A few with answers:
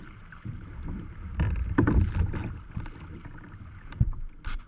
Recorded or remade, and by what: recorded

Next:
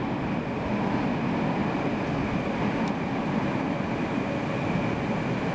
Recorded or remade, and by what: recorded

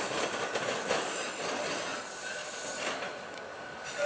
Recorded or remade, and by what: recorded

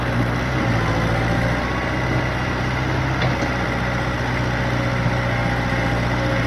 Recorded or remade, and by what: recorded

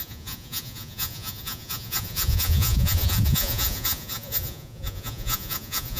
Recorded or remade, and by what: remade, vocoder, Vocos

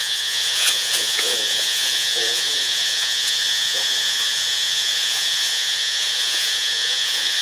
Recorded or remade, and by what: remade, vocoder, Vocos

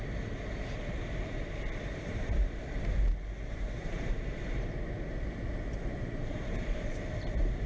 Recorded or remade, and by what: remade, vocoder, BigVGAN v2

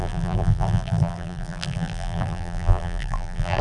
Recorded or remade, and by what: remade, vocoder, BigVGAN v2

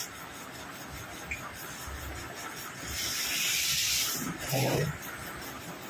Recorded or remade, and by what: remade, vocoder, BigVGAN v2